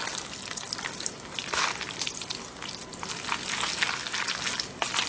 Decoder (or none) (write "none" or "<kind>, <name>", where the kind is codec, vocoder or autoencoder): none